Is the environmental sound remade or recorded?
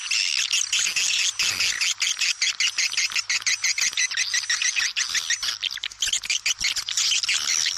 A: recorded